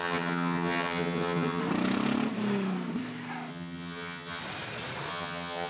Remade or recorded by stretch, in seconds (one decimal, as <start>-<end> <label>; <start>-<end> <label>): 0.0-1.6 remade; 1.6-3.5 recorded; 3.5-4.4 remade; 4.4-5.1 recorded; 5.1-5.7 remade